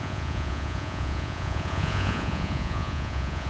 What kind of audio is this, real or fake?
fake